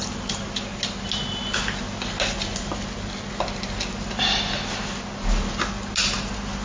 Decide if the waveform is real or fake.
real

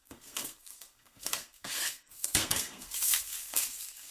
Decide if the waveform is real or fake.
fake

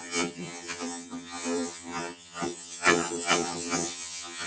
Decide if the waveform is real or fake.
fake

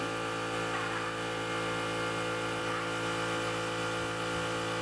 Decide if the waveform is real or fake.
real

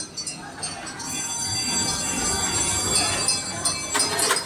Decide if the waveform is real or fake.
real